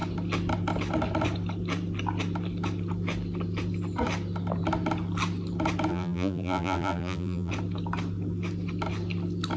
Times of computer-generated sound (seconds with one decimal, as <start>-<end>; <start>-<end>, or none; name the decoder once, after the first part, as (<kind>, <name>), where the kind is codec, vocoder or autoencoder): 5.9-7.5 (vocoder, BigVGAN v2)

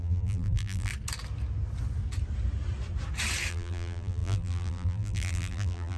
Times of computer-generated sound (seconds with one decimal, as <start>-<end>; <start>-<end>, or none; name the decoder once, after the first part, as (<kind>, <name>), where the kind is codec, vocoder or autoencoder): 0.0-0.9 (vocoder, BigVGAN v2); 3.5-6.0

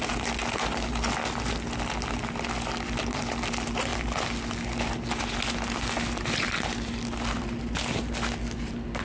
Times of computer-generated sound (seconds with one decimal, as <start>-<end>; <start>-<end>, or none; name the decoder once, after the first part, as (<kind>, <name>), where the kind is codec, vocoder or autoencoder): none

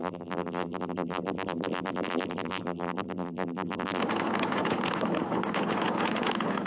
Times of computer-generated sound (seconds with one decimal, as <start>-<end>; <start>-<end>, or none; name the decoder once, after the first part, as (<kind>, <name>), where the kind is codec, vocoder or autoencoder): 0.0-4.0 (vocoder, BigVGAN v2)